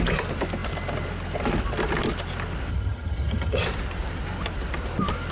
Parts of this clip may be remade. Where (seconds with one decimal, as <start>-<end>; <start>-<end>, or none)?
2.7-3.6